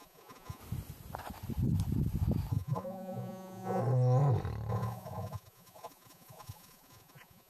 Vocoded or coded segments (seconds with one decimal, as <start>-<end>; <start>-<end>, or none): 0.0-0.6; 2.5-3.8; 4.7-7.5